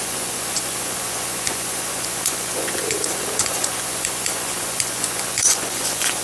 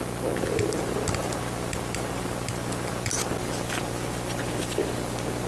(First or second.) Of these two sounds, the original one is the second